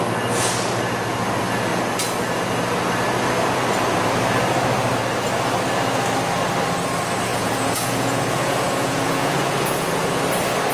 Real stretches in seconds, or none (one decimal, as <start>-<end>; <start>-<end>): 0.0-7.3; 10.2-10.7